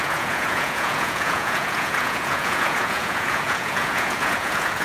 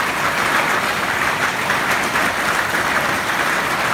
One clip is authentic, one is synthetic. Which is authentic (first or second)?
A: second